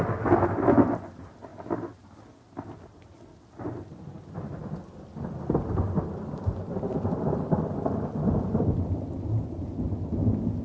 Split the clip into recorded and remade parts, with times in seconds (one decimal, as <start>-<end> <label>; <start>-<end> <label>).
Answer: 0.0-10.6 recorded